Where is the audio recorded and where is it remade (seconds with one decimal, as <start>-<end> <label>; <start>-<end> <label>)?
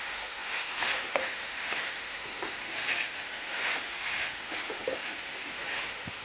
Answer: 0.0-6.2 remade